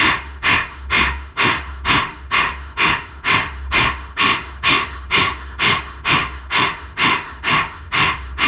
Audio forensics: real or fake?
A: fake